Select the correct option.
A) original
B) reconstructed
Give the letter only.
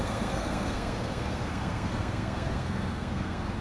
B